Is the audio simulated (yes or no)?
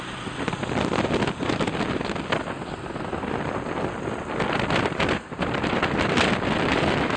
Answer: no